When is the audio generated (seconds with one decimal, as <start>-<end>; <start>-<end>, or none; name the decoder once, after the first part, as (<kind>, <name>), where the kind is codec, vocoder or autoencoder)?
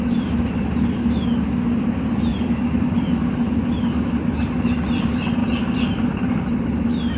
2.3-3.1 (vocoder, BigVGAN v2); 5.4-6.3